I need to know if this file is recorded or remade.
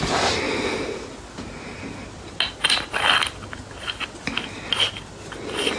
recorded